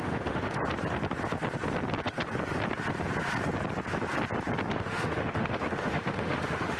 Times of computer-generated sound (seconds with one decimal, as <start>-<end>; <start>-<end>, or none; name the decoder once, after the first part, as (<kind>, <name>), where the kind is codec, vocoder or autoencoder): 0.0-0.6 (autoencoder, DAC-VAE); 4.7-6.8